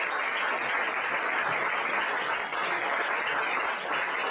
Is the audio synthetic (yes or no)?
no